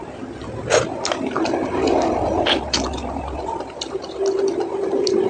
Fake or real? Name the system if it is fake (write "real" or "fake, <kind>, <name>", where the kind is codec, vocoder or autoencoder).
real